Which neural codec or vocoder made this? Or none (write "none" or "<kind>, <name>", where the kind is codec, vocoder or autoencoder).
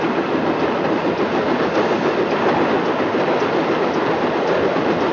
none